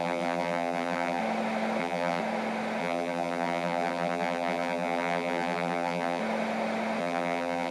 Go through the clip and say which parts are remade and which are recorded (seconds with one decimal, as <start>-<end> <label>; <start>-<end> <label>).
0.0-1.2 remade; 1.2-1.8 recorded; 1.8-2.2 remade; 2.2-2.8 recorded; 2.8-6.2 remade; 6.2-7.0 recorded; 7.0-7.7 remade

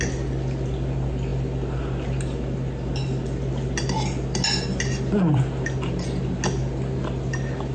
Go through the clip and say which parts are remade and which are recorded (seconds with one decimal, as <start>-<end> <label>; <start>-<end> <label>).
0.0-7.7 recorded

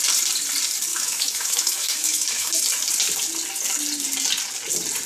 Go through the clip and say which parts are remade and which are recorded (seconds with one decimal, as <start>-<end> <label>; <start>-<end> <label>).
0.0-0.9 recorded; 0.9-2.5 remade; 2.5-5.1 recorded

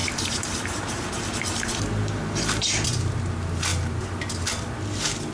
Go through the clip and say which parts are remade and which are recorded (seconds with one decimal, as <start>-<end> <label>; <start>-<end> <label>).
0.0-2.7 remade; 2.7-5.3 recorded

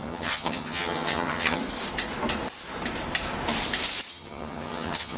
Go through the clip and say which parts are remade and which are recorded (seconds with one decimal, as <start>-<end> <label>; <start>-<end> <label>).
0.0-1.6 remade; 1.6-4.1 recorded; 4.1-5.2 remade

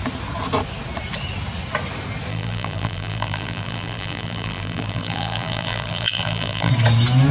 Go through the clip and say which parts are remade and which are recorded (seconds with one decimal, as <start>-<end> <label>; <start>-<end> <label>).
0.0-2.3 recorded; 2.3-6.7 remade; 6.7-7.3 recorded